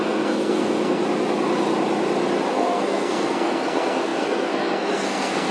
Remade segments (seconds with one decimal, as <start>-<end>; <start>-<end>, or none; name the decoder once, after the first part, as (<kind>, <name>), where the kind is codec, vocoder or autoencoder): 0.0-1.0 (codec, SNAC); 2.5-5.5